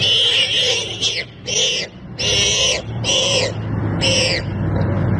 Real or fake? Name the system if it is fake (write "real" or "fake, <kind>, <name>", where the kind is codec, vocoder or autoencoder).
real